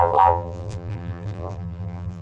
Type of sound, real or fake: fake